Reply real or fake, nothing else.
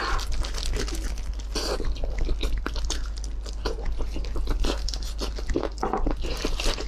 real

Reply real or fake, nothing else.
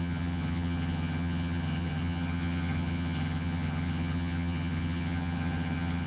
fake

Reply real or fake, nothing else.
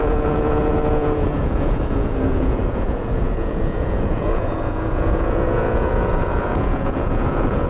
fake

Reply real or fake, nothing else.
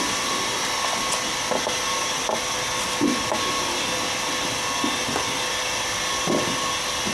real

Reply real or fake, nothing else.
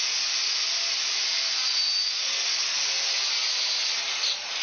real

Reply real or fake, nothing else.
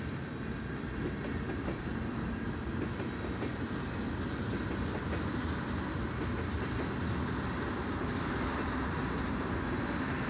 real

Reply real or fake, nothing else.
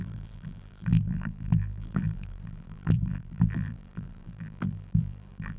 fake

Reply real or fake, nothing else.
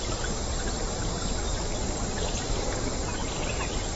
real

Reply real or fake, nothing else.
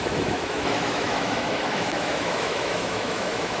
fake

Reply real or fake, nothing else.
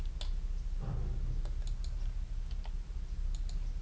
real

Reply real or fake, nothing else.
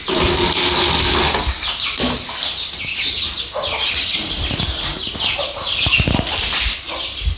real